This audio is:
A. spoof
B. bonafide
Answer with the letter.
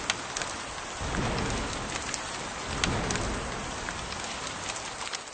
B